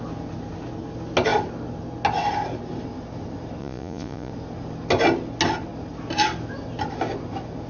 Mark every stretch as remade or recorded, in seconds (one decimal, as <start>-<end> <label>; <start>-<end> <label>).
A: 0.0-3.6 recorded; 3.6-4.3 remade; 4.3-7.7 recorded